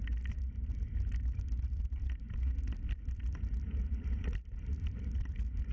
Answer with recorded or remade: remade